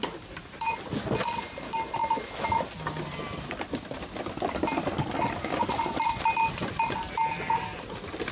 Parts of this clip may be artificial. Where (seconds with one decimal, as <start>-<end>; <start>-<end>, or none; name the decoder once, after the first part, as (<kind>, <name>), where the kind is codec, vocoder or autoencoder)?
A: none